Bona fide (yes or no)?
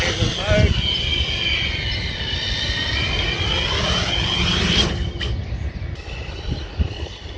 yes